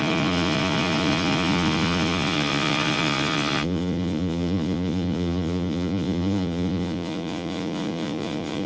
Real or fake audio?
fake